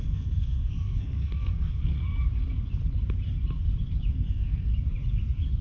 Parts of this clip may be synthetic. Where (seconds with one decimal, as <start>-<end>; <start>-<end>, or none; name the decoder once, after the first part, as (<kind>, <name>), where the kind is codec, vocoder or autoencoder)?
0.0-2.0 (codec, SNAC); 4.1-4.7